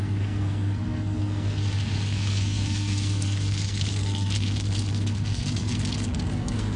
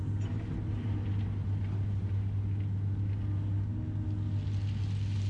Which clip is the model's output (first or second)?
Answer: first